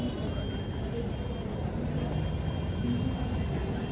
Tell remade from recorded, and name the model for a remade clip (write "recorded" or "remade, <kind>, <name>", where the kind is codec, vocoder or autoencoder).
recorded